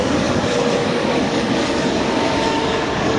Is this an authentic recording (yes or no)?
no